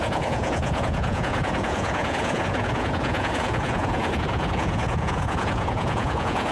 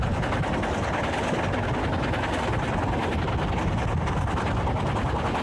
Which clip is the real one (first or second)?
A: second